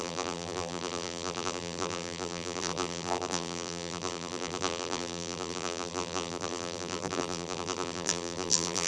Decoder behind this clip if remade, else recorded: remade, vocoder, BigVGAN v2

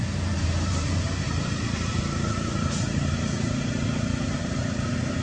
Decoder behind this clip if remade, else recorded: remade, vocoder, BigVGAN v2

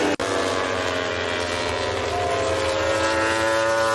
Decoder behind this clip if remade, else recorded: recorded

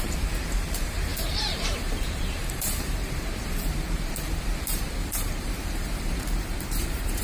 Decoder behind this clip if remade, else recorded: remade, vocoder, BigVGAN v2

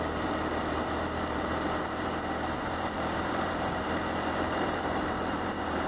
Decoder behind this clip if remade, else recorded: remade, vocoder, BigVGAN v2